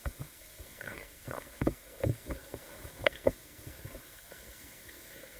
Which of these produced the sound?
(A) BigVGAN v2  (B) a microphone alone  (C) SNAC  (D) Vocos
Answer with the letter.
C